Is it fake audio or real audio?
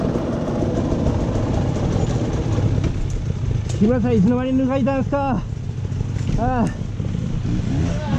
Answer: real